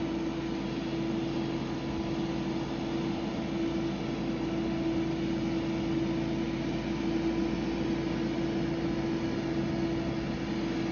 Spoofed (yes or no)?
no